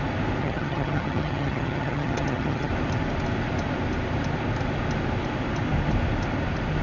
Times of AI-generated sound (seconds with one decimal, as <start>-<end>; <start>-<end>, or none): 0.4-2.7